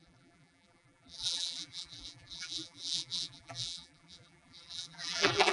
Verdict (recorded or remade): remade